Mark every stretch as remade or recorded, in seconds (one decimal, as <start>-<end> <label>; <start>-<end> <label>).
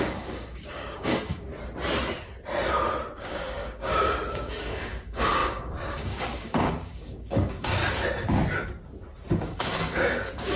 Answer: 0.0-1.5 remade; 1.5-3.2 recorded; 3.2-7.8 remade; 7.8-9.3 recorded; 9.3-10.6 remade